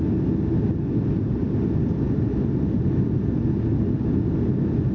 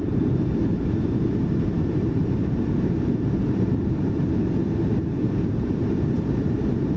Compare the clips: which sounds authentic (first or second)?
first